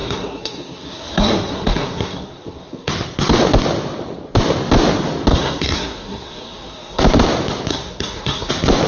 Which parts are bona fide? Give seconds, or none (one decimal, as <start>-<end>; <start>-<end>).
2.9-5.3; 7.0-7.7; 8.5-8.9